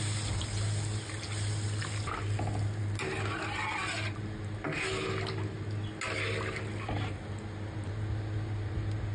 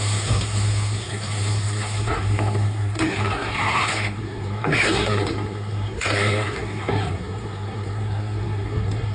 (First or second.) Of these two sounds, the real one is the first